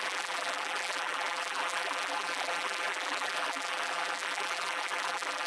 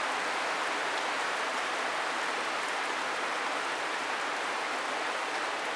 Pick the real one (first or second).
second